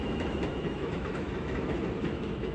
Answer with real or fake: fake